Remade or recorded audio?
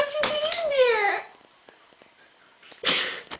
recorded